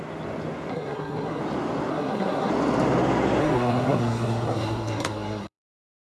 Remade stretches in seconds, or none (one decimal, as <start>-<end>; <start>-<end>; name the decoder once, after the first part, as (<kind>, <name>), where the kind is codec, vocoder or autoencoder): 0.7-1.4 (codec, SNAC); 1.9-2.5; 3.4-6.0